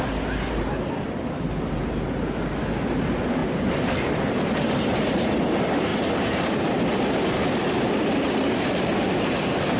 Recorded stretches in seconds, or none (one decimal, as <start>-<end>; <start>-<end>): 0.0-9.8